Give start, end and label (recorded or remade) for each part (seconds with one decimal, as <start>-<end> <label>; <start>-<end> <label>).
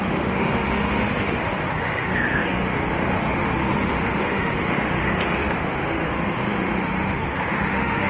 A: 0.0-8.1 remade